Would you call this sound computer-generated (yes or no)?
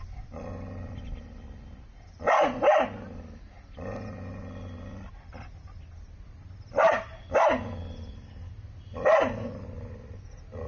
no